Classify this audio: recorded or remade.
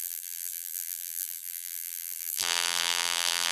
remade